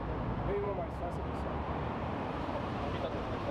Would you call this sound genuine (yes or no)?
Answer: no